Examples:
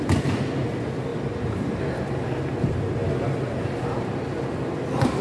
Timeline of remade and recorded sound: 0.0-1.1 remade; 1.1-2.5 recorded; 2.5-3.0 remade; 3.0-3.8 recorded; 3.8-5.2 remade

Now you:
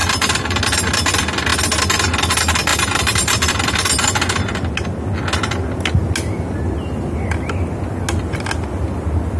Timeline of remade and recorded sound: 0.0-0.6 remade; 0.6-2.7 recorded; 2.7-3.5 remade; 3.5-9.4 recorded